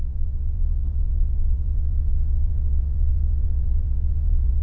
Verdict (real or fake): fake